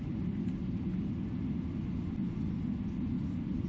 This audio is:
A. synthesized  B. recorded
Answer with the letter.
B